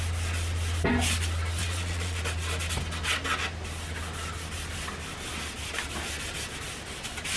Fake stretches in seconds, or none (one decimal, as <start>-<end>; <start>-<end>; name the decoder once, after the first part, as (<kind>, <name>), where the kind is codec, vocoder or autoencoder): 1.6-2.2 (vocoder, Vocos)